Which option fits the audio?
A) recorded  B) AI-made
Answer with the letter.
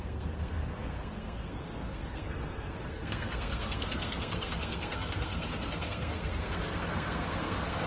B